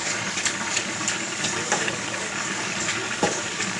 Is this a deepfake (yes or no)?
yes